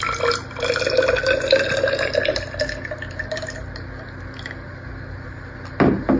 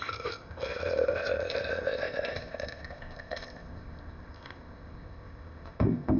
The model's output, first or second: second